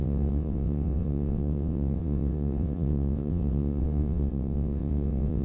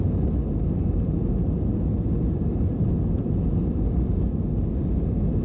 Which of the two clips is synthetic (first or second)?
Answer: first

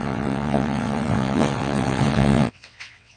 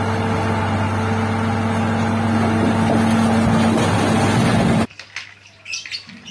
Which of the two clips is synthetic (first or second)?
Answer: first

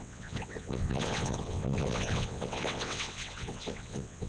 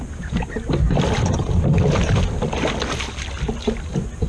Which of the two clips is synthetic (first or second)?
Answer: first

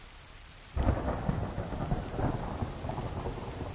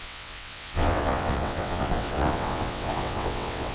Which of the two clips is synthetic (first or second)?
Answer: second